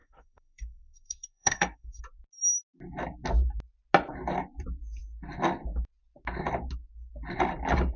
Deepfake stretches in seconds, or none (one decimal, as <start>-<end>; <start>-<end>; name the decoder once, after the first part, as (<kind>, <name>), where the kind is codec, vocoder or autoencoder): 0.0-2.0 (codec, SNAC)